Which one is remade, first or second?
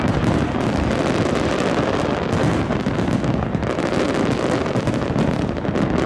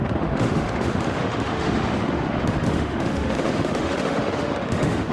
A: second